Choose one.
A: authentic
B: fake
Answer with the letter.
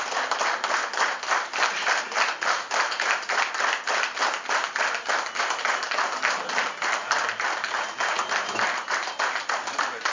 A